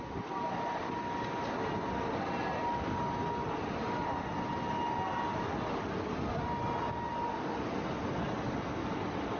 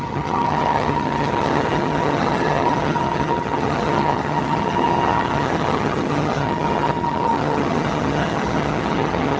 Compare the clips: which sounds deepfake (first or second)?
second